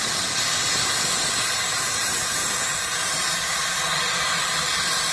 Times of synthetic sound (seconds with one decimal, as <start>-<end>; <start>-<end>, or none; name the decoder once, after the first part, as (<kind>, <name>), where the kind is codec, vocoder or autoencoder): 1.7-5.1 (vocoder, BigVGAN v2)